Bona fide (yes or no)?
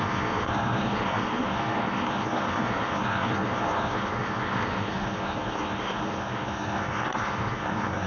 no